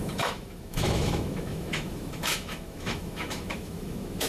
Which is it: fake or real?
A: fake